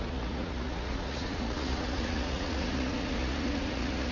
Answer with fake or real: fake